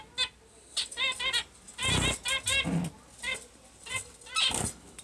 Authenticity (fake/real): real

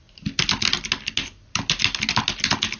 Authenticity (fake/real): real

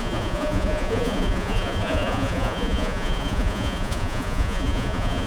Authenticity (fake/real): fake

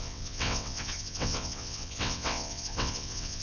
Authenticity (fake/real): fake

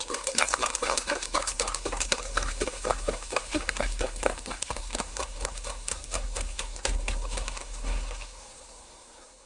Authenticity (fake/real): fake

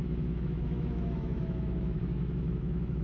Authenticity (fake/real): fake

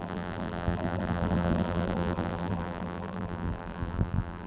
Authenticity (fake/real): fake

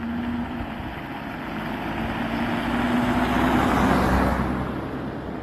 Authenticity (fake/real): real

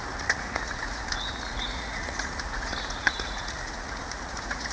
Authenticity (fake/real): fake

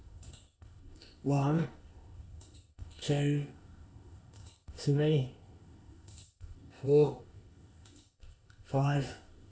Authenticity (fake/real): fake